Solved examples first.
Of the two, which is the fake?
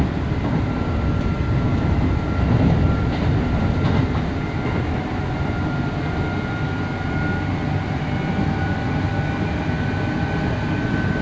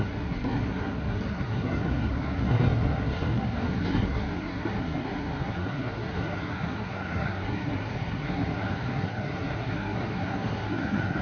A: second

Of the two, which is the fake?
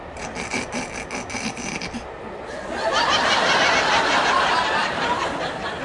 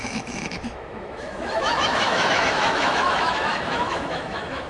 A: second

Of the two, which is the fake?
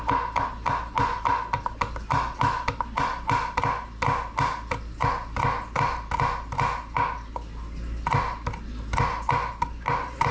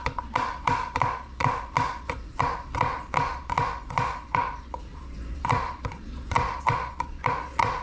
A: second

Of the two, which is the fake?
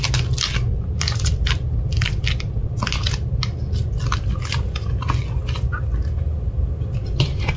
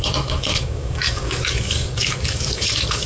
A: second